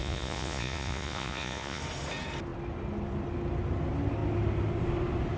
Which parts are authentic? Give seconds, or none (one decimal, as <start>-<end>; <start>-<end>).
1.8-5.4